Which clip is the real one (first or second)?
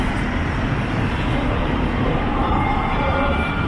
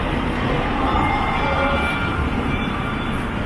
second